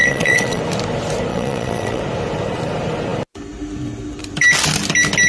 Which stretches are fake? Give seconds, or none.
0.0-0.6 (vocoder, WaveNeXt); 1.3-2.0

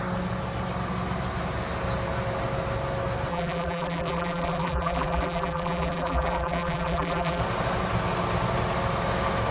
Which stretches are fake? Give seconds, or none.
3.3-7.4 (vocoder, BigVGAN v2)